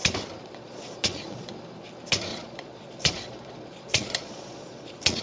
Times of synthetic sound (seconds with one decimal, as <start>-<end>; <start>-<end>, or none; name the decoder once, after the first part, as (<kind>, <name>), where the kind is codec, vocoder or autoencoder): 0.4-1.5 (vocoder, Vocos); 2.3-5.2